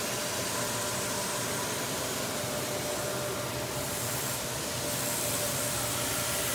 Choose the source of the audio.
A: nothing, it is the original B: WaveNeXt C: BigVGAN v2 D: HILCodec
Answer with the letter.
A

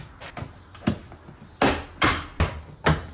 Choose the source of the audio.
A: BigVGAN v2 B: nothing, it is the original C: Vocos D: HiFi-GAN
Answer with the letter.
B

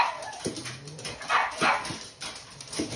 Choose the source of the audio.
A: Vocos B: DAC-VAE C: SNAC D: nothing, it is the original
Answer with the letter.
D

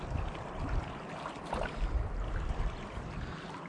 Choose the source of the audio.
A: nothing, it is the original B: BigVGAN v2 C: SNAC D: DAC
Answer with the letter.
B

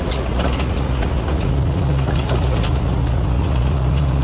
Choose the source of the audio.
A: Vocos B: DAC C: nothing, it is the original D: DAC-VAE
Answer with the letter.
A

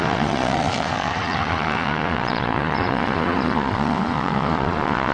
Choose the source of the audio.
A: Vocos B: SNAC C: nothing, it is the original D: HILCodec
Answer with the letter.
A